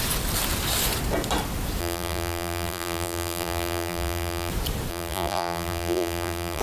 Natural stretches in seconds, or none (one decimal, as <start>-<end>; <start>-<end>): 0.0-1.8; 4.5-4.9